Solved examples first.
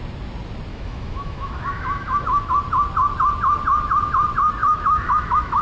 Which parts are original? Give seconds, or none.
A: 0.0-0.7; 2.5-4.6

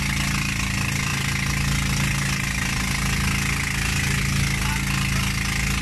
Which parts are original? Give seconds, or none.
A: 0.0-5.8

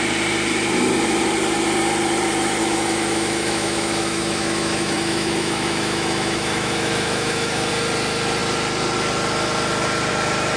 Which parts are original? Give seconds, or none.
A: 0.0-2.6; 7.7-10.6